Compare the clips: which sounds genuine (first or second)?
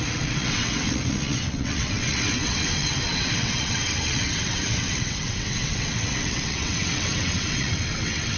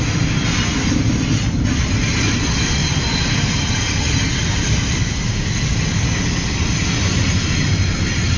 second